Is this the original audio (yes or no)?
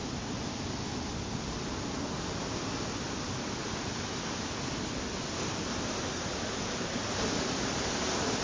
yes